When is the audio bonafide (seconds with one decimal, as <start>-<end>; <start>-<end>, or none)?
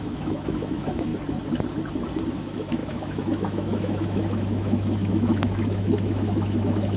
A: 1.1-2.3